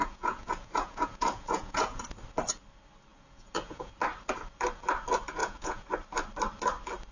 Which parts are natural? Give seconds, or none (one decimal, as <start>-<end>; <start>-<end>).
2.0-3.1; 3.9-5.4; 5.9-7.1